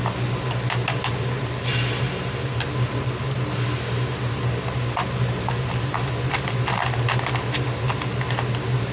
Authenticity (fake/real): real